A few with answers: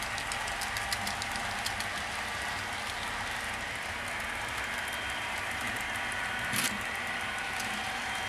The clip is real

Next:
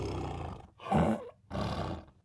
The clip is real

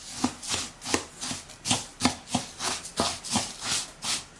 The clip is real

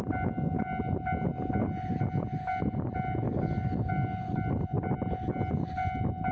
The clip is real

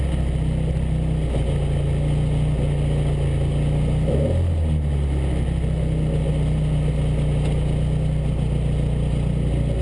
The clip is real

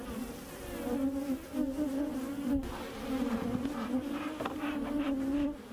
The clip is real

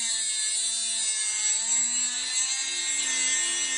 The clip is real